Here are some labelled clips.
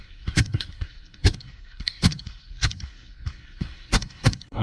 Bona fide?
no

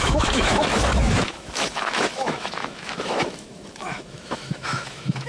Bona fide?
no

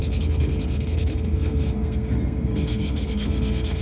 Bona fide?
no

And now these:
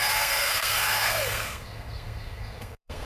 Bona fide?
no